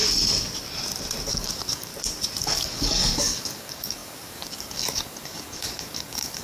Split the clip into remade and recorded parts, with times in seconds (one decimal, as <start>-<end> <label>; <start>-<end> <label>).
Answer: 0.0-1.3 recorded; 1.3-1.9 remade; 1.9-2.4 recorded; 2.4-6.4 remade